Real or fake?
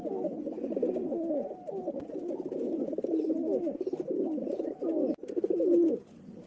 real